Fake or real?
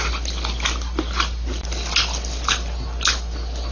real